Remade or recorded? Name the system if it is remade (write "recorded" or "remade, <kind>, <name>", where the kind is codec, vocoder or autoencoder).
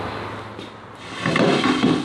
recorded